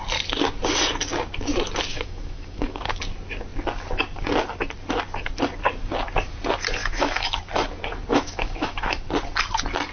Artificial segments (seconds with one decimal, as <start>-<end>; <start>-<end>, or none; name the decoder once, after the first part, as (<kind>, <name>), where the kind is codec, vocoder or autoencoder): 1.9-2.8 (autoencoder, DAC-VAE); 6.8-7.4; 8.1-9.0